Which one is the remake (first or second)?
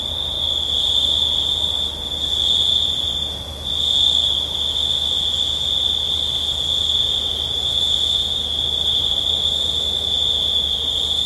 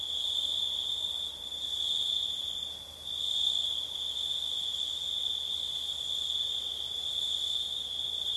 second